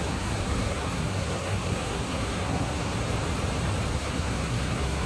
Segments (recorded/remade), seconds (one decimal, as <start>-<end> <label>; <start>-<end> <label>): 0.0-2.9 remade; 2.9-3.9 recorded; 3.9-5.1 remade